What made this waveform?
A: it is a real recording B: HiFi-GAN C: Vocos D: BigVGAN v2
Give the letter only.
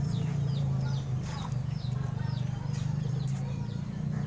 D